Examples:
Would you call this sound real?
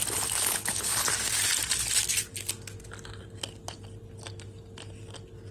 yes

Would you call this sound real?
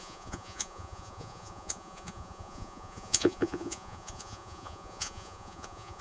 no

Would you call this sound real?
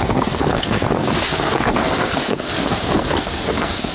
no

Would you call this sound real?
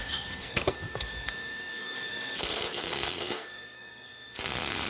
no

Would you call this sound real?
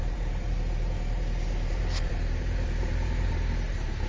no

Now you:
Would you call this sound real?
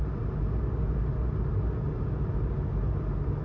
yes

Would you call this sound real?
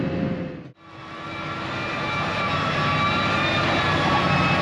yes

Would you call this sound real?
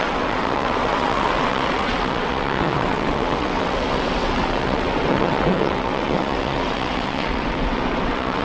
no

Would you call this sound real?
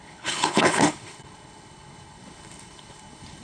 no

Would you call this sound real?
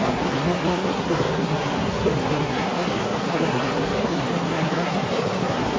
no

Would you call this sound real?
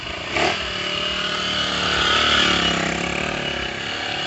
yes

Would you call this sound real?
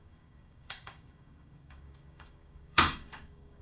no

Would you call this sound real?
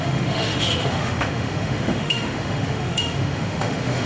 no